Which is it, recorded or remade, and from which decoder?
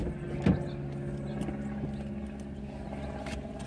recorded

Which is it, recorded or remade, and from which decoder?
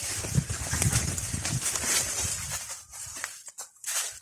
remade, vocoder, BigVGAN v2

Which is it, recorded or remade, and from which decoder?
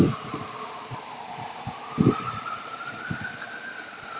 remade, vocoder, BigVGAN v2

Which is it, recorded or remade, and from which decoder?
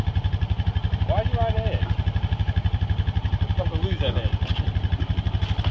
recorded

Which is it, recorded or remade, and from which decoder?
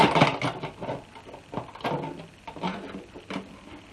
recorded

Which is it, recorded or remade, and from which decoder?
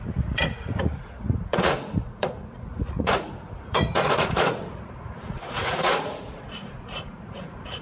remade, vocoder, Vocos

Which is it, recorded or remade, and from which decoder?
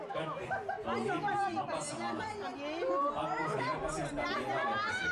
recorded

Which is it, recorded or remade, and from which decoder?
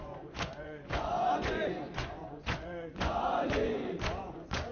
remade, vocoder, Vocos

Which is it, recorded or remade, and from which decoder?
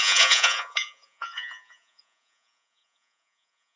remade, vocoder, Vocos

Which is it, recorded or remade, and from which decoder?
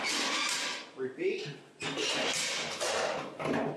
recorded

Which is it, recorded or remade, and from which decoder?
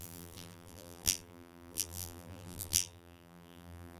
remade, vocoder, BigVGAN v2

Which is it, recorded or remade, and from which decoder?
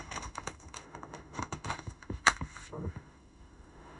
remade, autoencoder, DAC-VAE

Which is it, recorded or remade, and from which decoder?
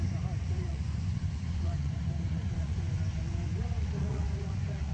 remade, vocoder, Vocos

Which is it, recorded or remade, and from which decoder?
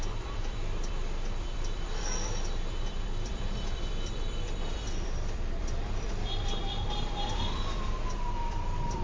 remade, vocoder, BigVGAN v2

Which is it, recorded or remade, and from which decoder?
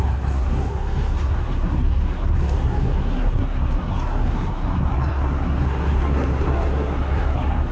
remade, codec, SNAC